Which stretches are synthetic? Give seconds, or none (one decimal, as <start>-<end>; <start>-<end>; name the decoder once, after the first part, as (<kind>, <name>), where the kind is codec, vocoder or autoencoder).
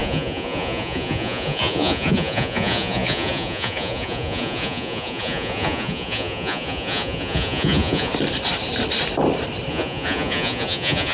0.0-8.1 (vocoder, Vocos); 9.7-11.1